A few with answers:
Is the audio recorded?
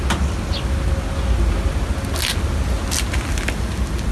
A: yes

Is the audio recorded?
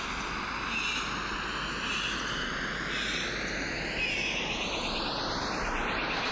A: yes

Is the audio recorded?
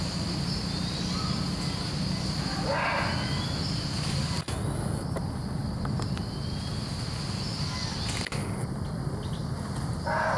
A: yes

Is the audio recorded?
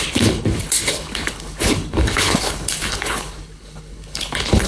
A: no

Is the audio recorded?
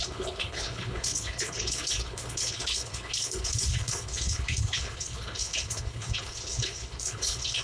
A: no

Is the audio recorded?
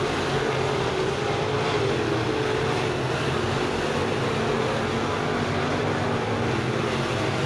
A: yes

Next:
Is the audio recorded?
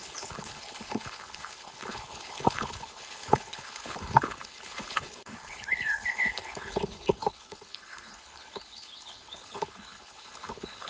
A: no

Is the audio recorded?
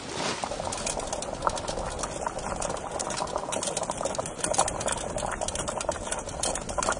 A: yes